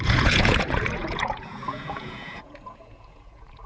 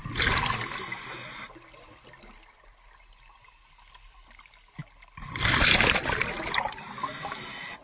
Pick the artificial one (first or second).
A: first